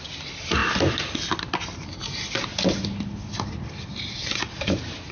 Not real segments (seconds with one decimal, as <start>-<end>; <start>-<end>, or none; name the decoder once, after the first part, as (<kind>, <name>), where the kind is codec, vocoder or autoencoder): none